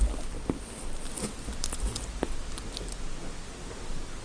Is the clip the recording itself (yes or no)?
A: yes